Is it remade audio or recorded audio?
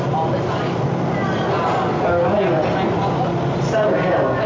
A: recorded